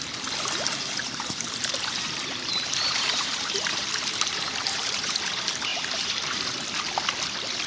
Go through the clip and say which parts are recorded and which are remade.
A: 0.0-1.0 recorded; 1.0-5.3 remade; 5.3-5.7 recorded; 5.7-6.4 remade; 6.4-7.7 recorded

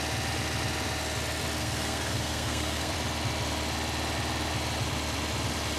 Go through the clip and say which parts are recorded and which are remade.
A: 0.0-1.6 recorded; 1.6-2.9 remade; 2.9-5.8 recorded

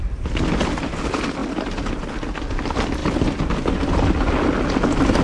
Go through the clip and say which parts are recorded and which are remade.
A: 0.0-5.2 recorded